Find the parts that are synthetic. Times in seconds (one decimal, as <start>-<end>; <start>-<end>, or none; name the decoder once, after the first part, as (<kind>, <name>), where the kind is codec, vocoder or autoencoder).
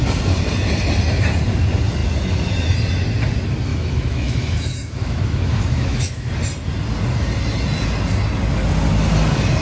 3.7-6.3 (autoencoder, DAC-VAE)